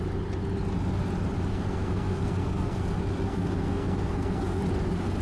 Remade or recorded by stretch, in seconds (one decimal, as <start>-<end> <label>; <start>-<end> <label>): 0.0-1.5 recorded; 1.5-4.6 remade; 4.6-5.2 recorded